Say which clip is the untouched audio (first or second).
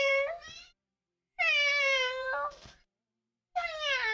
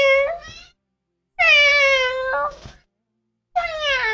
second